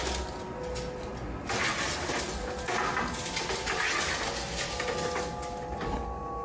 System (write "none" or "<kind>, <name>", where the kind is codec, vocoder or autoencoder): none